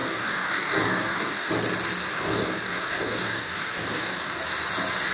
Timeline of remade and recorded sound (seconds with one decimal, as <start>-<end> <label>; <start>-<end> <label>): 0.0-1.5 remade; 1.5-2.1 recorded; 2.1-4.3 remade; 4.3-5.1 recorded